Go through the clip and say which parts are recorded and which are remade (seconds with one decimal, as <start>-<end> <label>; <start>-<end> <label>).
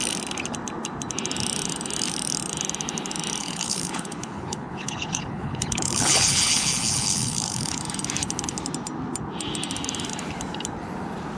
0.0-3.4 recorded; 3.4-7.8 remade; 7.8-11.4 recorded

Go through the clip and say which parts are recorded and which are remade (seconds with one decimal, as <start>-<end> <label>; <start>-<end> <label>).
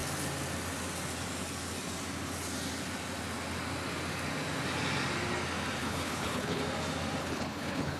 0.0-5.8 recorded; 5.8-6.6 remade; 6.6-7.2 recorded; 7.2-8.0 remade